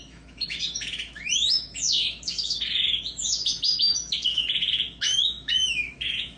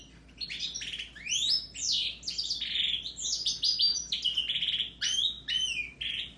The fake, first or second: first